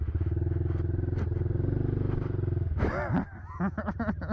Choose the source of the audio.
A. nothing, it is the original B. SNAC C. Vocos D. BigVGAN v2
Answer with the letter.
A